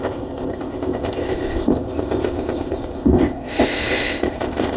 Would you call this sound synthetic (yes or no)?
yes